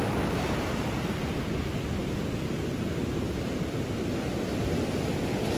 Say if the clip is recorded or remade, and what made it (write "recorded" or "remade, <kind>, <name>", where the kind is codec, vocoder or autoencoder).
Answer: recorded